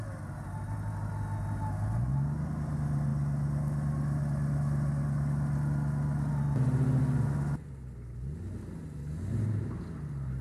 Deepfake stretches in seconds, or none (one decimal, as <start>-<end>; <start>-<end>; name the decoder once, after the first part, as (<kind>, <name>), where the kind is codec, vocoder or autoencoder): 9.3-9.8 (vocoder, BigVGAN v2)